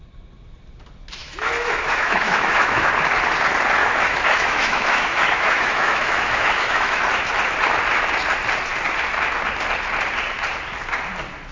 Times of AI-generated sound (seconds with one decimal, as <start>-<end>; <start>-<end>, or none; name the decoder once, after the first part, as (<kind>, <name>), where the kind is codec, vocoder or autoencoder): 1.2-2.9 (autoencoder, DAC-VAE); 3.8-7.0